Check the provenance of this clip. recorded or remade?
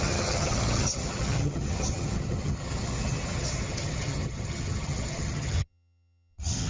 remade